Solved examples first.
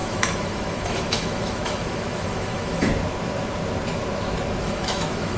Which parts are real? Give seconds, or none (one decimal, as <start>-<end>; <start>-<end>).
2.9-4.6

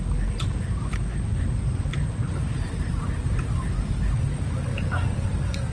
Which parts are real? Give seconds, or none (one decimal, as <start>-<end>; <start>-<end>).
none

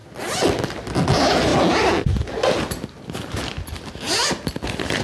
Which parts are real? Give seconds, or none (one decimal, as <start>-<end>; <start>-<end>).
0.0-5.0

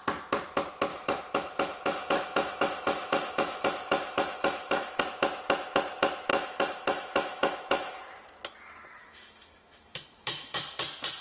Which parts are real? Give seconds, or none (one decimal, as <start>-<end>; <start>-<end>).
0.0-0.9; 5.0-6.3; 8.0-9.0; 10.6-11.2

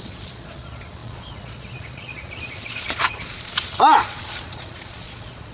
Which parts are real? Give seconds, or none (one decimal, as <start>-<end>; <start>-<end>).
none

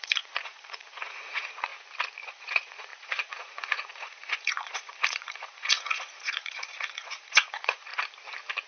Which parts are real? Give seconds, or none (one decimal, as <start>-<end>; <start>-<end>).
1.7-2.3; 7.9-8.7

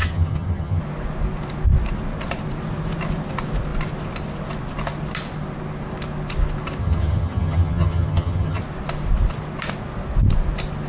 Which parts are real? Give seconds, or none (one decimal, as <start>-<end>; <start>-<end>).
0.8-6.8; 8.6-10.9